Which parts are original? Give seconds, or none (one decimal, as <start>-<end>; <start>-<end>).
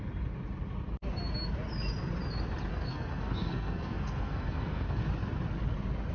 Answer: 0.0-2.7; 5.0-6.1